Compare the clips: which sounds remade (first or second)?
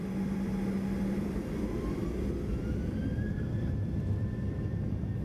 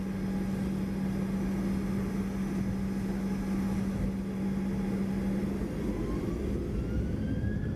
first